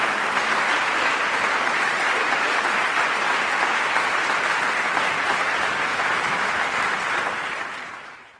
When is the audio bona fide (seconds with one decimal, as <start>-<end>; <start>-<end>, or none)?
0.0-5.9; 6.5-8.4